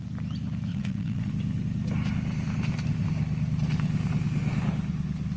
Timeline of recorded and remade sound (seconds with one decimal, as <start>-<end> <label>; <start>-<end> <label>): 0.0-0.7 recorded; 0.7-1.3 remade; 1.3-5.4 recorded